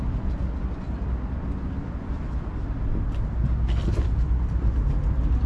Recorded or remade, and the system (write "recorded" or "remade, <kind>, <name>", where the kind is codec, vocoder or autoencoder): recorded